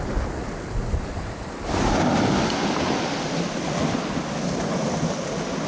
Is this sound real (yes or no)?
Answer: yes